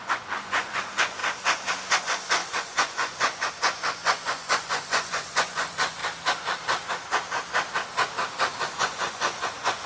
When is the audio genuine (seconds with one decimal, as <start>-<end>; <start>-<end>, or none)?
1.2-2.0; 6.0-8.7